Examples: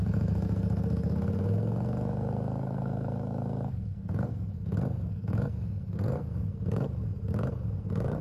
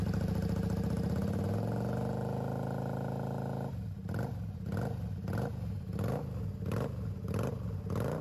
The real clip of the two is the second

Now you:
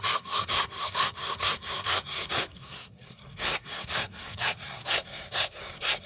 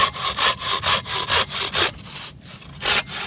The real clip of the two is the second